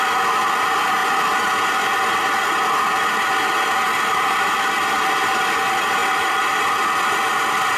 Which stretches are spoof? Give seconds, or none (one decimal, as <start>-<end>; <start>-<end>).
none